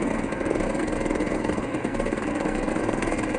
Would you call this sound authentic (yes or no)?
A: no